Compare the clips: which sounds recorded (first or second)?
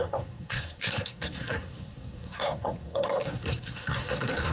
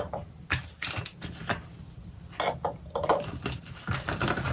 second